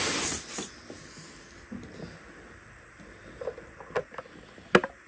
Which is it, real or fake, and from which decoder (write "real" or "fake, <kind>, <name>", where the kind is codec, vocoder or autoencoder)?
real